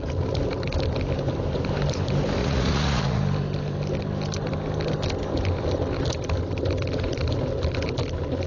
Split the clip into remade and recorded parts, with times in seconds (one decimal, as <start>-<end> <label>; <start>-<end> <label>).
0.0-2.4 recorded; 2.4-3.2 remade; 3.2-8.5 recorded